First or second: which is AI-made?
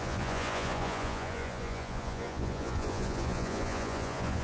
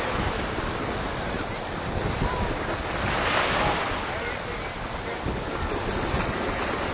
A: first